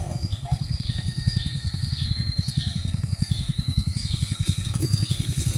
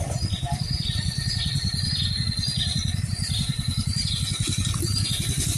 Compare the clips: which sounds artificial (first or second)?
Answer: first